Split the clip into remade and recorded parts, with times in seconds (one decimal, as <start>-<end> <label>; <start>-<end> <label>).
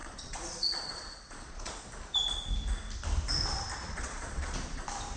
0.0-1.8 remade; 1.8-3.7 recorded; 3.7-4.8 remade; 4.8-5.2 recorded